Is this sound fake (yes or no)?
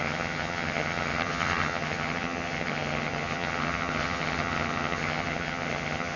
yes